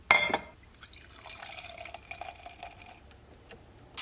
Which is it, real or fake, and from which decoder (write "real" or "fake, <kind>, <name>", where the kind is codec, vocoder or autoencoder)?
real